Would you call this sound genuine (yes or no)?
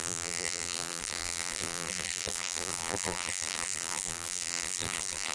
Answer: no